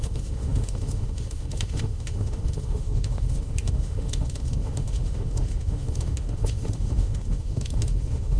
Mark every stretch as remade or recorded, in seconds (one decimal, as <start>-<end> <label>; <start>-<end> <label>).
0.0-8.4 remade